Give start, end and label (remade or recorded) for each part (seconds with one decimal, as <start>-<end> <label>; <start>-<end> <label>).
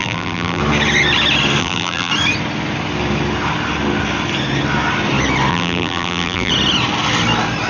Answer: 0.0-0.6 remade; 0.6-1.6 recorded; 1.6-2.1 remade; 2.1-5.5 recorded; 5.5-6.5 remade; 6.5-7.7 recorded